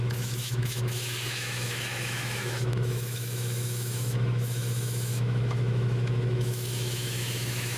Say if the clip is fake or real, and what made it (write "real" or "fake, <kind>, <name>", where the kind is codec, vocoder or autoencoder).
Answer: fake, autoencoder, DAC-VAE